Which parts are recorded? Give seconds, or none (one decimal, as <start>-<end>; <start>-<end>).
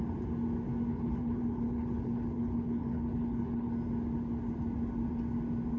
0.0-0.9; 3.7-5.8